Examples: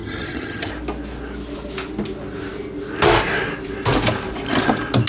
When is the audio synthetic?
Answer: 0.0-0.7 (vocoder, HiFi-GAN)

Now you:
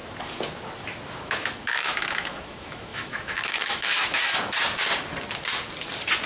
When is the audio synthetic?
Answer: 1.2-4.2 (autoencoder, DAC-VAE)

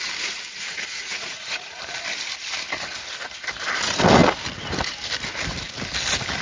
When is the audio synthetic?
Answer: 0.5-1.8 (vocoder, Vocos)

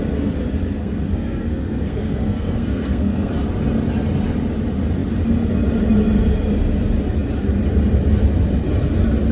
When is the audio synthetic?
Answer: 0.8-3.3 (codec, SNAC)

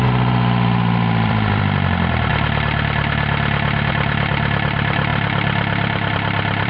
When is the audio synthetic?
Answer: 0.0-2.3 (vocoder, BigVGAN v2); 3.9-6.7

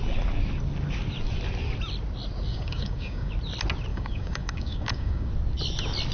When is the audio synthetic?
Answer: 2.5-3.3 (codec, DAC); 3.9-5.3

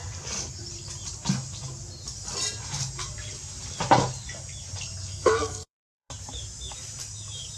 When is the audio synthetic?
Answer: 5.0-6.1 (codec, SNAC)

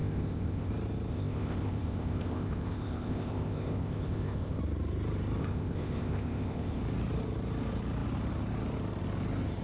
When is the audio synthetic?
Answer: 0.0-0.7 (codec, ZipCodec); 1.1-4.6; 5.4-6.8